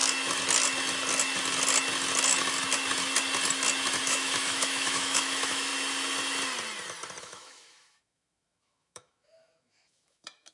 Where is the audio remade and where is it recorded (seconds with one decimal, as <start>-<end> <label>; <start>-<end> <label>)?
0.0-4.0 recorded; 4.0-5.7 remade; 5.7-7.2 recorded; 7.2-10.5 remade